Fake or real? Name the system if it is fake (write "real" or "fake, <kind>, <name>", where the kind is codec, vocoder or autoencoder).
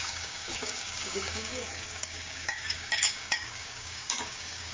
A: fake, codec, DAC